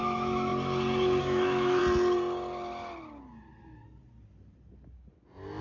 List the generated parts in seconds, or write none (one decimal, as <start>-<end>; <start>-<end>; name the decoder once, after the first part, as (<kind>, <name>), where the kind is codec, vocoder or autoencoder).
0.0-0.5 (autoencoder, DAC-VAE); 1.2-1.8